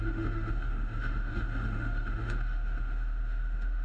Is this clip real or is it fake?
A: fake